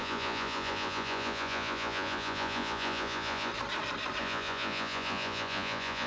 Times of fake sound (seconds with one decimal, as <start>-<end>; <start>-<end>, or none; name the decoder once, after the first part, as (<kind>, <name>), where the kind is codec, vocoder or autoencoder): 0.0-3.5 (vocoder, Vocos); 4.2-6.1